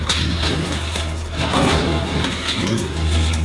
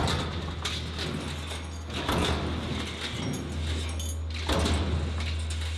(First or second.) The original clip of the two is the second